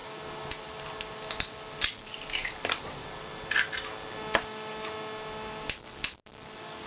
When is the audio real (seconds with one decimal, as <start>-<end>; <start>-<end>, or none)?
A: 0.0-6.9

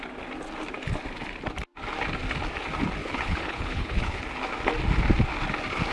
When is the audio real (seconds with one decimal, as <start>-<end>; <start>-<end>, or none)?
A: 0.0-3.0; 4.2-5.9